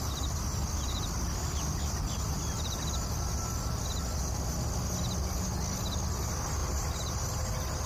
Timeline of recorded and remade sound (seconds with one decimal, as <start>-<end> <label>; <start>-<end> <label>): 0.0-6.6 recorded; 6.6-7.5 remade; 7.5-7.9 recorded